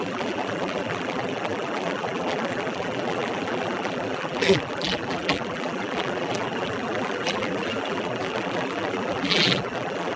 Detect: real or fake fake